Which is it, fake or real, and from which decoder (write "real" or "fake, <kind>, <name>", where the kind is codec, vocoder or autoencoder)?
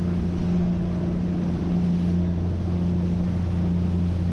real